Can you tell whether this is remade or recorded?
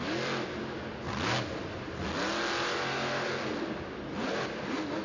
recorded